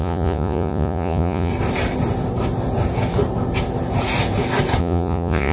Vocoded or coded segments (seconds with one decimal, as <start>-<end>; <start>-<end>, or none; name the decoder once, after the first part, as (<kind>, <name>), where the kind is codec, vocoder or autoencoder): 0.0-1.5 (vocoder, Vocos); 4.8-5.5